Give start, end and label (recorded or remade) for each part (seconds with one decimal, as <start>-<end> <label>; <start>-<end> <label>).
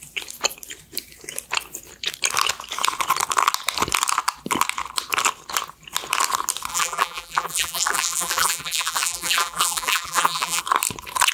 0.0-6.7 recorded; 6.7-10.6 remade; 10.6-11.3 recorded